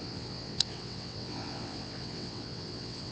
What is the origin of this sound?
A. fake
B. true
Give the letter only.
A